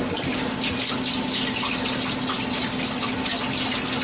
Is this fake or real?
real